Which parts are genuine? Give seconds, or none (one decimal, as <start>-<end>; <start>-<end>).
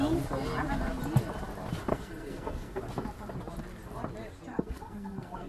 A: 0.0-1.9; 2.8-4.5